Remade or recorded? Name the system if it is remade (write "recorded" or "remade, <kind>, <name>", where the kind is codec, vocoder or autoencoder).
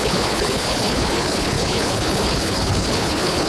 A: remade, codec, HILCodec